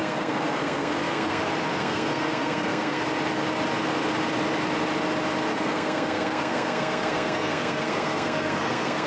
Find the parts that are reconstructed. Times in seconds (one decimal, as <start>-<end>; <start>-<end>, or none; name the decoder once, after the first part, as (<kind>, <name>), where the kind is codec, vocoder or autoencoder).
0.0-1.4 (codec, SNAC); 1.8-3.0; 5.5-9.1